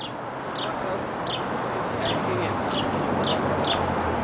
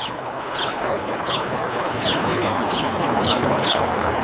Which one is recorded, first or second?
first